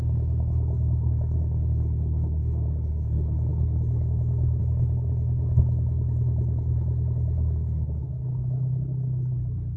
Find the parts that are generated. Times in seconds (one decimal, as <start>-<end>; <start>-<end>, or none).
0.0-9.8